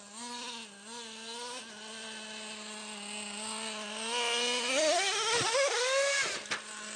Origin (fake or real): real